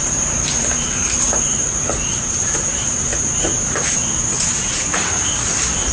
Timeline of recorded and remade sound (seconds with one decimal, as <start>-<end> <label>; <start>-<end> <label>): 0.0-5.9 remade